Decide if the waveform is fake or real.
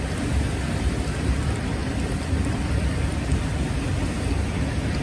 real